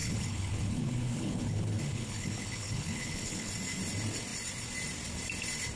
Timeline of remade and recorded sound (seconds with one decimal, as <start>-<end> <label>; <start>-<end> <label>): 0.0-3.5 remade; 3.5-5.8 recorded